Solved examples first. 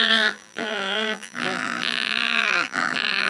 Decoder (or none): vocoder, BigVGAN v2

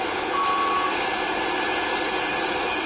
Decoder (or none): none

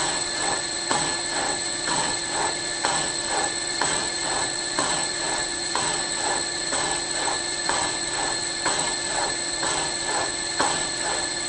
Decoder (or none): vocoder, WaveNeXt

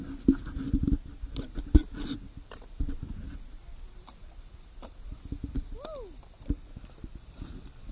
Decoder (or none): none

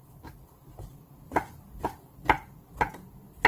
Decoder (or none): none